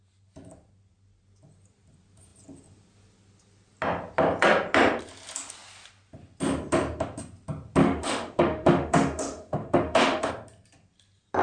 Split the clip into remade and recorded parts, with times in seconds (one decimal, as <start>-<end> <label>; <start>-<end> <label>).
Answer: 0.0-7.8 recorded; 7.8-10.3 remade; 10.3-11.4 recorded